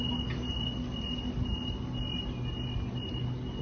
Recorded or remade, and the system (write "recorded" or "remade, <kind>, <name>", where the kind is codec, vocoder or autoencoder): recorded